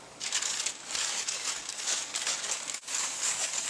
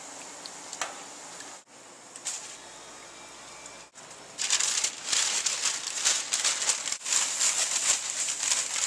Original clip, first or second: second